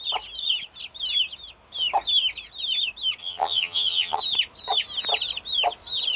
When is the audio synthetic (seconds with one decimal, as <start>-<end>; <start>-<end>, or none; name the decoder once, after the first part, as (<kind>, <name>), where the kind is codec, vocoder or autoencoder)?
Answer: 3.2-4.2 (vocoder, HiFi-GAN)